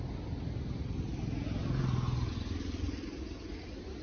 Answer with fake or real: real